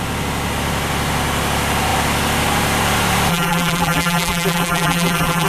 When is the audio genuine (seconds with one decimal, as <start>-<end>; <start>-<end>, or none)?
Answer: 0.0-3.3